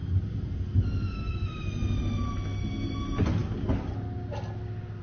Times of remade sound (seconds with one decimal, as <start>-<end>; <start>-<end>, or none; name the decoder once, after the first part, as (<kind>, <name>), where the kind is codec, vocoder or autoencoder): none